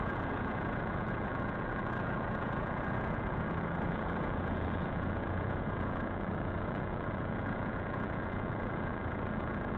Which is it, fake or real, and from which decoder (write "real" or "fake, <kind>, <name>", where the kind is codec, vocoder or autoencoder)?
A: fake, vocoder, Vocos